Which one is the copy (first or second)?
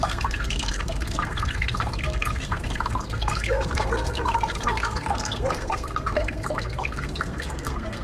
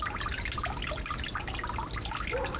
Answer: first